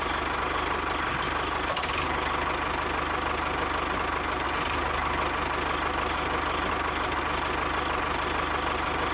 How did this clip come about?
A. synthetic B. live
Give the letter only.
B